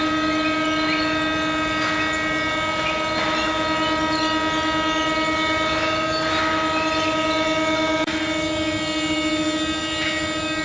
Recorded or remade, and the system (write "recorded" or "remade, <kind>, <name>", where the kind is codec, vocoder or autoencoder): recorded